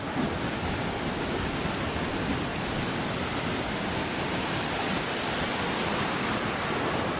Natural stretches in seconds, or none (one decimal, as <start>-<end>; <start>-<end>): 0.0-7.2